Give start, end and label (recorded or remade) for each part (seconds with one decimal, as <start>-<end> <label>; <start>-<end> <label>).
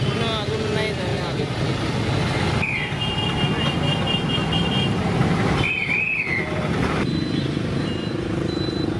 0.0-1.1 recorded; 1.1-1.6 remade; 1.6-4.4 recorded; 4.4-9.0 remade